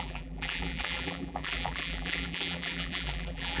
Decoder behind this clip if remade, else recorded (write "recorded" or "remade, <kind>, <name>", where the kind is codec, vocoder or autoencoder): remade, vocoder, BigVGAN v2